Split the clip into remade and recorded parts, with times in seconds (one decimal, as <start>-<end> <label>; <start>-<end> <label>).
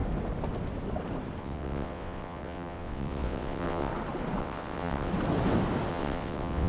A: 0.0-1.4 recorded; 1.4-3.9 remade; 3.9-4.4 recorded; 4.4-5.1 remade; 5.1-5.9 recorded; 5.9-6.7 remade